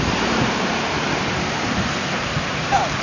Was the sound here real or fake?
fake